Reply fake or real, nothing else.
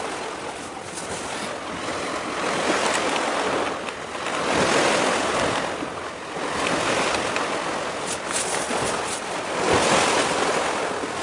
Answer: real